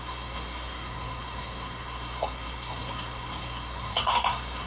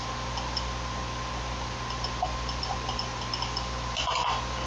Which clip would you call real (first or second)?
second